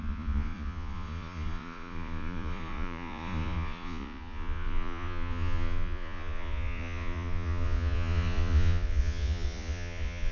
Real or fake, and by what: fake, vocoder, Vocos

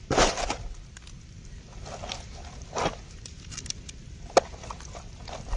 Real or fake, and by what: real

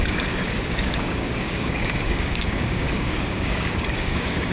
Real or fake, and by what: fake, codec, DAC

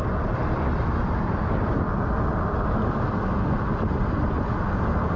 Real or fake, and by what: real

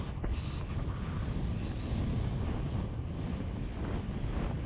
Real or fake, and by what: real